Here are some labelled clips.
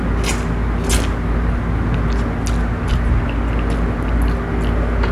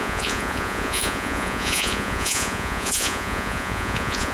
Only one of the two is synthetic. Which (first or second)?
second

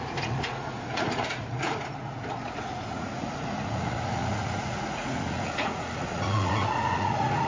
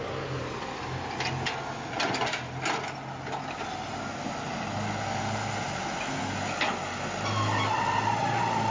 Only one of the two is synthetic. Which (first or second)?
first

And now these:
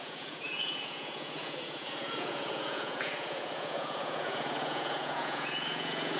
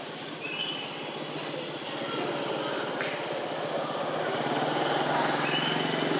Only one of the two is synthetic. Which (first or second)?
first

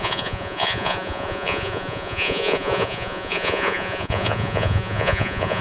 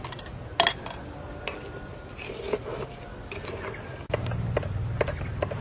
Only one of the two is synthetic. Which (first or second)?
first